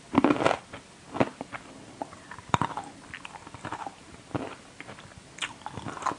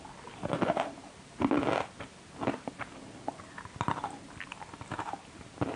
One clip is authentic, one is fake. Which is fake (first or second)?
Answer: first